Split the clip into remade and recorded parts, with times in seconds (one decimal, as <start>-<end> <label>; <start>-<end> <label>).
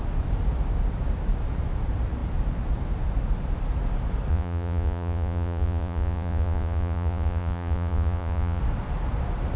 0.0-4.3 recorded; 4.3-8.6 remade; 8.6-9.6 recorded